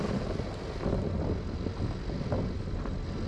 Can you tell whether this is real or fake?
real